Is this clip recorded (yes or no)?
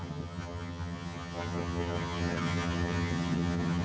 no